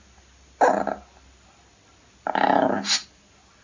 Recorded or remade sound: recorded